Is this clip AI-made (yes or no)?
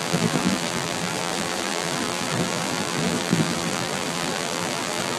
yes